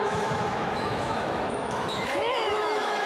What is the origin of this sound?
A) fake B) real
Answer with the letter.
A